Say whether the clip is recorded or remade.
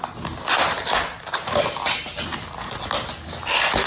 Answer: recorded